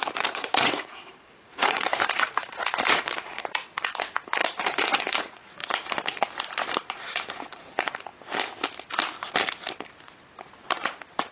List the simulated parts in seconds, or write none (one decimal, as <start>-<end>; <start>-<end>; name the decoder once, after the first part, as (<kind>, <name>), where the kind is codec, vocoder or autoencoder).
0.0-5.6 (vocoder, Vocos); 6.9-8.1